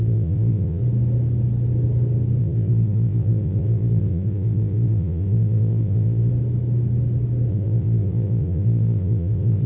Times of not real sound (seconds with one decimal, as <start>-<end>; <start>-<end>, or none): 0.0-0.8; 2.4-6.3; 7.5-9.7